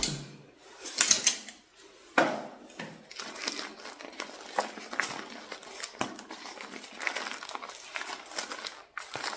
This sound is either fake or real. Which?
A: real